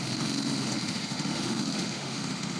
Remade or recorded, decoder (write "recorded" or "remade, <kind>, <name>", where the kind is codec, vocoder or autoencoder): remade, autoencoder, DAC-VAE